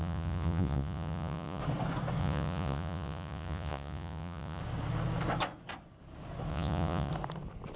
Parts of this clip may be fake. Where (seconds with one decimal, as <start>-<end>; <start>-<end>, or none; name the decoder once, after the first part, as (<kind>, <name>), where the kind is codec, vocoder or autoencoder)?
0.0-1.6 (vocoder, Vocos); 2.2-4.6; 6.5-7.1